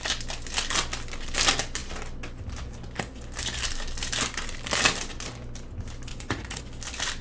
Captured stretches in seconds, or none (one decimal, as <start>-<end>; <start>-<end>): 0.0-6.1; 6.6-7.2